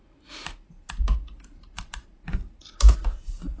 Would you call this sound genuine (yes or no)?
no